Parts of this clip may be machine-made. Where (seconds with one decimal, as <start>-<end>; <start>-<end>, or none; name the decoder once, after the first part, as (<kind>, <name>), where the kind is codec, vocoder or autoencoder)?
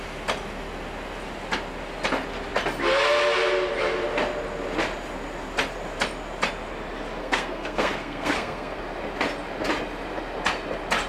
7.2-8.8 (codec, SNAC)